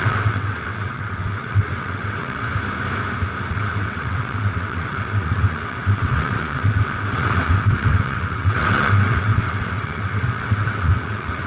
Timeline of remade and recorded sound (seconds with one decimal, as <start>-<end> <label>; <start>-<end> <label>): 0.0-2.5 remade; 2.5-3.5 recorded; 3.5-11.5 remade